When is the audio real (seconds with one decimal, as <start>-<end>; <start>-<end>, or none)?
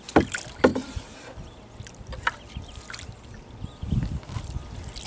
0.0-5.1